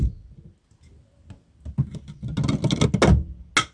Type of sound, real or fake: real